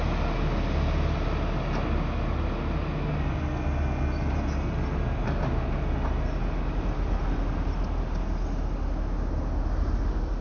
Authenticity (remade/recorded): recorded